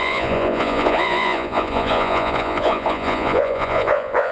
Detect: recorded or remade remade